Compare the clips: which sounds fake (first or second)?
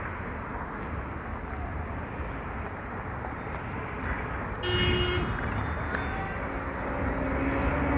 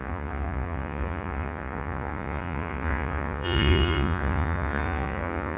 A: second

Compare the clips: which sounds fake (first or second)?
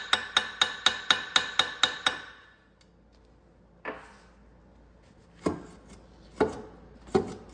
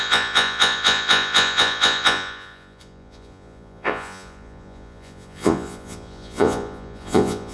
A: second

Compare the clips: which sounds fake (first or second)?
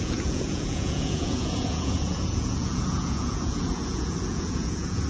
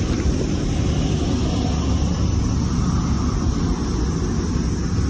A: first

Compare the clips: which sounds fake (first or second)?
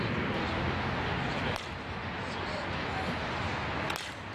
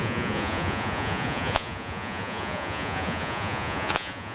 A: second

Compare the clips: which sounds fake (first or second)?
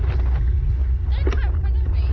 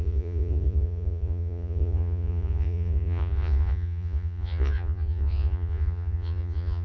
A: second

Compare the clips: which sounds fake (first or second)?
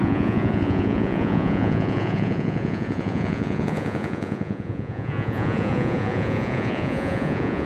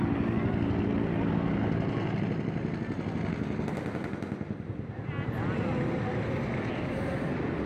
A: first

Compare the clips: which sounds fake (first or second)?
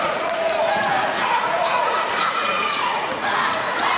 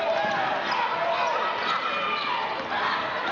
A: first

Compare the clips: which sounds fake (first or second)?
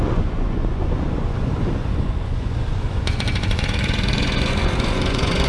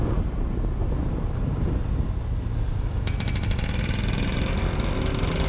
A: first